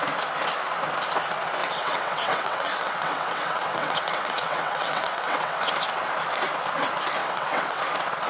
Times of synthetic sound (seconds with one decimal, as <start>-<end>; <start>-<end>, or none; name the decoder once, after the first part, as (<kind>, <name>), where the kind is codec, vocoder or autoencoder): 1.6-5.7 (vocoder, WaveNeXt); 7.2-7.8